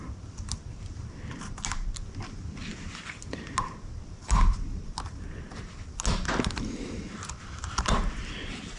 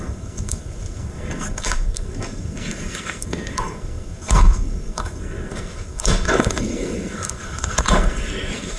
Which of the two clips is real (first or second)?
first